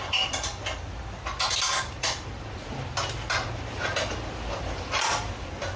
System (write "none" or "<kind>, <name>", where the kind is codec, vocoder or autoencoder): none